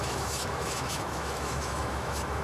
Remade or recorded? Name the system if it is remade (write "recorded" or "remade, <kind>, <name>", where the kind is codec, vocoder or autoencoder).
remade, autoencoder, DAC-VAE